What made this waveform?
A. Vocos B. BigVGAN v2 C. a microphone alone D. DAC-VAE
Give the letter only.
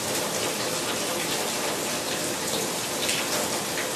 C